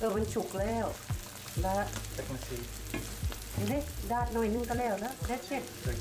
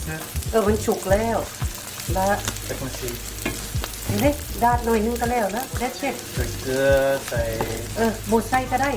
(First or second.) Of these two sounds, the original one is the second